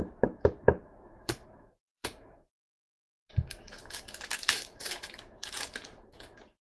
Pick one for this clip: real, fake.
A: fake